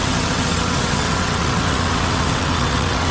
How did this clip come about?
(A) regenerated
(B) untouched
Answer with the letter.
A